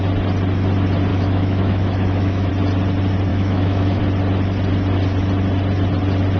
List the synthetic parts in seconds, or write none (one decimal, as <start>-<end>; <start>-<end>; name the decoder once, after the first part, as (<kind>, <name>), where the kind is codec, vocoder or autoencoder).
1.1-2.5 (autoencoder, DAC-VAE); 3.3-4.0